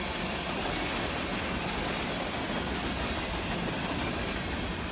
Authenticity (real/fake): real